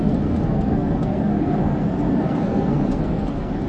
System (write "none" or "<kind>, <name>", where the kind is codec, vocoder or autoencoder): codec, SNAC